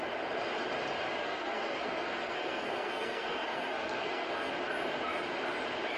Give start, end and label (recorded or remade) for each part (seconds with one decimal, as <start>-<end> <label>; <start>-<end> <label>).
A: 0.0-1.2 recorded; 1.2-4.5 remade; 4.5-6.0 recorded